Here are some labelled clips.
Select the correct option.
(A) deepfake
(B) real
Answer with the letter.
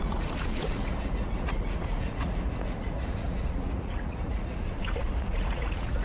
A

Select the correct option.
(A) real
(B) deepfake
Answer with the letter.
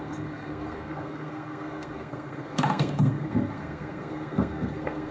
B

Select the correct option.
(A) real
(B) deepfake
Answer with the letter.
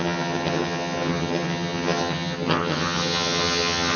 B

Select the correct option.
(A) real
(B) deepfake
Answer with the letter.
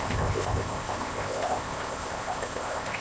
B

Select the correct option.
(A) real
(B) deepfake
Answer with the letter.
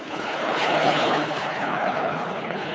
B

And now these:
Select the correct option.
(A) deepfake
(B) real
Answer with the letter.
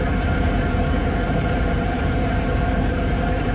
A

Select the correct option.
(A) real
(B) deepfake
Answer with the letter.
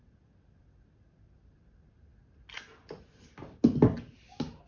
A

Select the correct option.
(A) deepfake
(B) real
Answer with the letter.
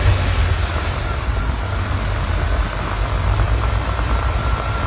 B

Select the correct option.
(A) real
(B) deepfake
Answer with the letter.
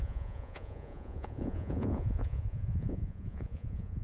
B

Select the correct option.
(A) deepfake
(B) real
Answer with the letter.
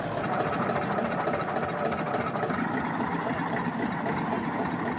B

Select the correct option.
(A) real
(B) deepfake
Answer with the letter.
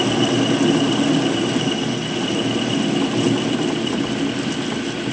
A